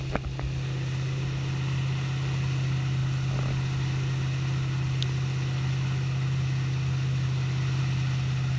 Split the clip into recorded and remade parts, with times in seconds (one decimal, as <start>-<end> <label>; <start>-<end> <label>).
0.0-8.6 recorded